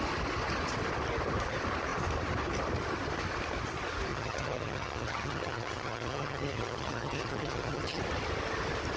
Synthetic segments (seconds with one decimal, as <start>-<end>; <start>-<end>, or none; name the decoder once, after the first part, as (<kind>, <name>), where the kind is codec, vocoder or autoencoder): 4.1-8.0 (vocoder, HiFi-GAN)